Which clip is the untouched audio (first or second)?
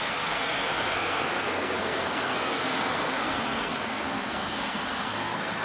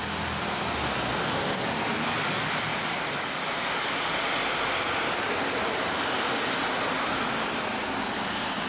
second